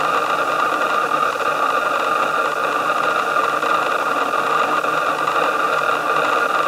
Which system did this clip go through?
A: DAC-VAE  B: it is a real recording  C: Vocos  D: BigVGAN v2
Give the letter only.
B